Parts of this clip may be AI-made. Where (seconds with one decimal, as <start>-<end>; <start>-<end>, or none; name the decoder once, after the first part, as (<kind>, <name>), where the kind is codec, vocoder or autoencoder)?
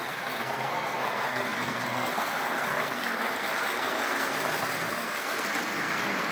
0.0-6.3 (codec, SNAC)